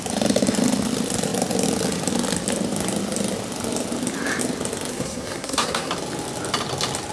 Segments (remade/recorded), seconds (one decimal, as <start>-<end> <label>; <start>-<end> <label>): 0.0-4.9 recorded; 4.9-5.9 remade; 5.9-7.1 recorded